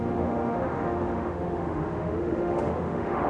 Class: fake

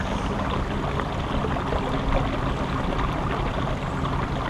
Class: real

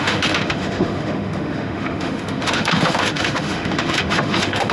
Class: fake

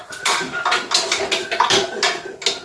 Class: real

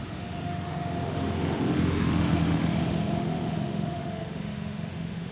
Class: fake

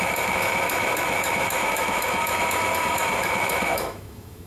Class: fake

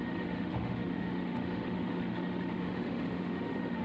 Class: fake